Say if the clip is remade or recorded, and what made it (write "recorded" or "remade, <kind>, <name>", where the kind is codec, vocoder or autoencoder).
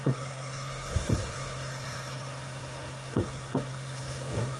remade, codec, SNAC